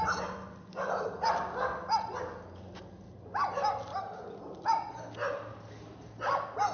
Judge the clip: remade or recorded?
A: recorded